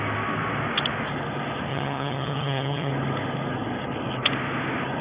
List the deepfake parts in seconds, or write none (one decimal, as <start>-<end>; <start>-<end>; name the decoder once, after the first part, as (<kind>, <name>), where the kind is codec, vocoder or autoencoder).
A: 1.7-2.9 (vocoder, HiFi-GAN)